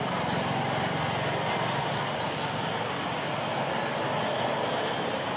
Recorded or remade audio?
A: recorded